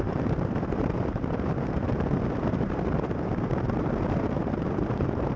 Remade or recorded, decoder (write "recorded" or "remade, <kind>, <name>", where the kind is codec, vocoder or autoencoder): remade, vocoder, BigVGAN v2